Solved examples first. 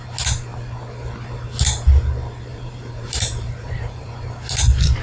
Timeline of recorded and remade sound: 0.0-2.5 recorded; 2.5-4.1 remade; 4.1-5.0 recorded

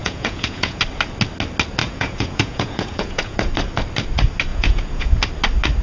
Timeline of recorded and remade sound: 0.0-0.8 remade; 0.8-1.8 recorded; 1.8-3.5 remade; 3.5-4.5 recorded; 4.5-5.1 remade; 5.1-5.8 recorded

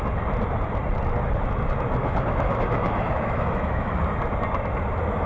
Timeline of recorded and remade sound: 0.0-2.0 recorded; 2.0-4.0 remade; 4.0-5.3 recorded

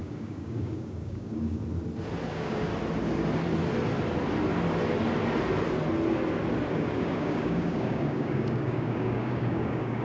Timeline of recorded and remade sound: 0.0-1.6 remade; 1.6-2.3 recorded; 2.3-2.7 remade; 2.7-6.7 recorded; 6.7-10.0 remade

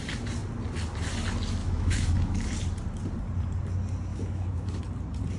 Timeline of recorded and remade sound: 0.0-1.6 recorded; 1.6-2.5 remade; 2.5-4.1 recorded; 4.1-4.8 remade; 4.8-5.4 recorded